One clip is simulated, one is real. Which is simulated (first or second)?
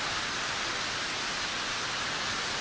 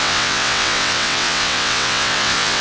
second